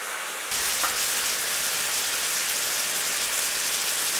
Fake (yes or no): no